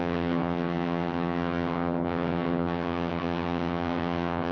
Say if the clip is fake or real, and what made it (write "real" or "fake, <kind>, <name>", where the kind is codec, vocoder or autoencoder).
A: fake, vocoder, HiFi-GAN